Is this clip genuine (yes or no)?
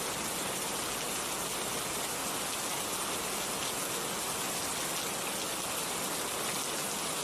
yes